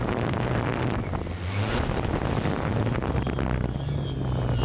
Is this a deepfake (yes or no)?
no